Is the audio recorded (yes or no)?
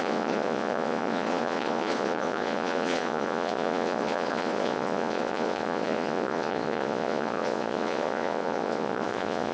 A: no